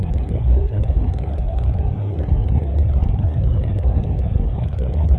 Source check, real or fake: fake